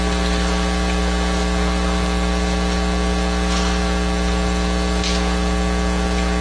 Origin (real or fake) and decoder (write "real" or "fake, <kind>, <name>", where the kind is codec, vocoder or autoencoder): real